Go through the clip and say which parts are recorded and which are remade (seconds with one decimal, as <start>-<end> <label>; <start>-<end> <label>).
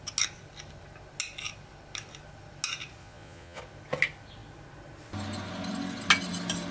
0.0-3.0 recorded; 3.0-3.6 remade; 3.6-6.7 recorded